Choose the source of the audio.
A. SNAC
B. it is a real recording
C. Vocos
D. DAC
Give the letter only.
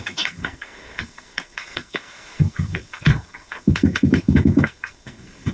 A